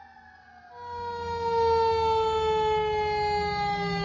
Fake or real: real